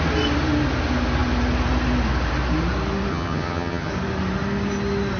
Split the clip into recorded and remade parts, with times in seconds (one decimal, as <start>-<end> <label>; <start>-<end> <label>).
0.0-3.1 recorded; 3.1-3.9 remade; 3.9-5.2 recorded